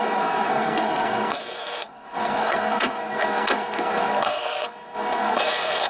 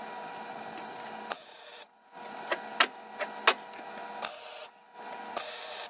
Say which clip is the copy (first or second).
first